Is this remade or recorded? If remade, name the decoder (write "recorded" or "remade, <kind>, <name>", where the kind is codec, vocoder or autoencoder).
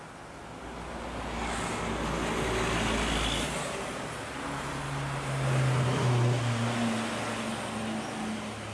recorded